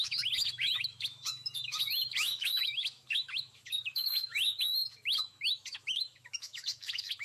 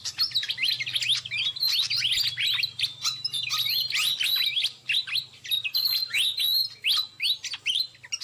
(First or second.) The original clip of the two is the second